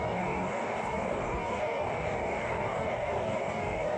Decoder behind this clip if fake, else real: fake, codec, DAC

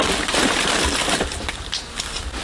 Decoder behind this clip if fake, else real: real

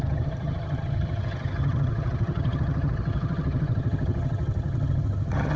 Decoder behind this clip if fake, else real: fake, vocoder, HiFi-GAN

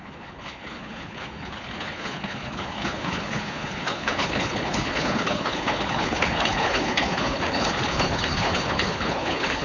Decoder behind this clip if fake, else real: fake, codec, HILCodec